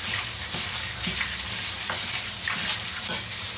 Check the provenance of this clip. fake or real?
real